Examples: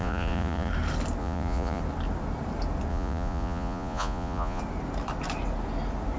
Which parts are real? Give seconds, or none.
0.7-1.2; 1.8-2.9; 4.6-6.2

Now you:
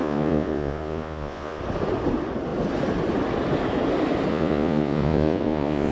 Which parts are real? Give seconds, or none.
1.6-4.3

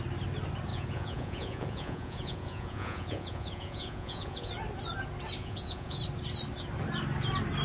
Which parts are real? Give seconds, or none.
0.0-0.7; 4.5-5.4; 6.0-7.6

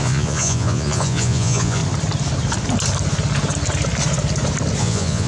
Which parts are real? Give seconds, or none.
1.8-4.8

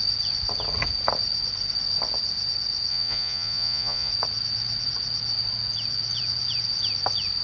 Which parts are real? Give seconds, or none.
0.0-2.9; 4.1-7.4

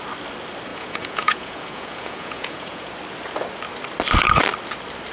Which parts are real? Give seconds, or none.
0.0-0.7; 2.9-5.1